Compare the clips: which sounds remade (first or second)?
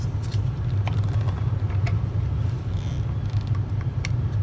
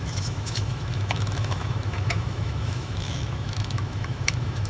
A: second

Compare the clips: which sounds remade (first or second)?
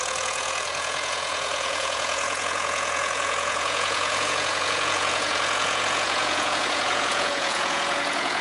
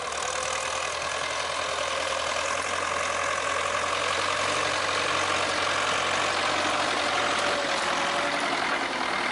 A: first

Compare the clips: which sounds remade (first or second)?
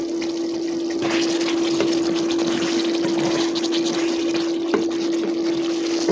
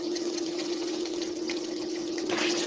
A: second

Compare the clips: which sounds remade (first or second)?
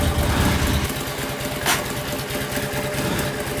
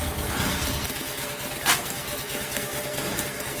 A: second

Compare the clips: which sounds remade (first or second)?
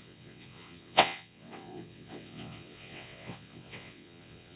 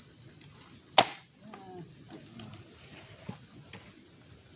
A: first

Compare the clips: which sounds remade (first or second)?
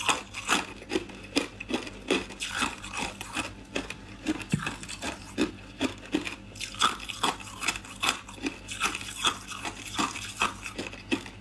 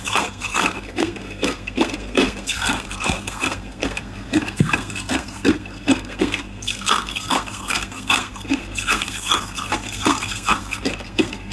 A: second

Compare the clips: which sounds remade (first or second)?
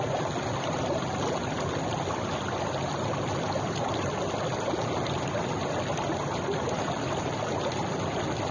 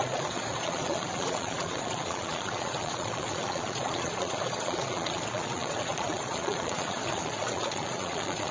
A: second